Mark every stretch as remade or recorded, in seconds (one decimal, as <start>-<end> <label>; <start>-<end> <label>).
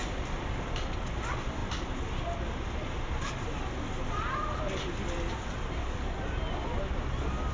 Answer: 0.0-7.5 recorded